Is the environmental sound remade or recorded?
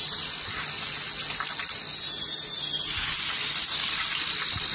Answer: recorded